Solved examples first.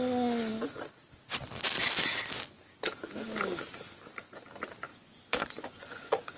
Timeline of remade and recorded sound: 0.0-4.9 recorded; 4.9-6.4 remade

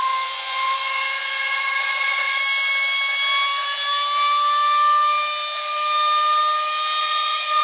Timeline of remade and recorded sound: 0.0-2.4 remade; 2.4-7.0 recorded; 7.0-7.6 remade

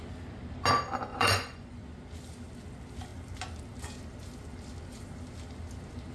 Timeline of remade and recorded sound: 0.0-1.1 recorded; 1.1-1.8 remade; 1.8-6.1 recorded

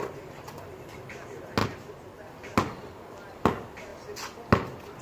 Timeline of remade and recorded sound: 0.0-5.0 recorded